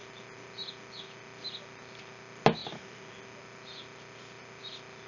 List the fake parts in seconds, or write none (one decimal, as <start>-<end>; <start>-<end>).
none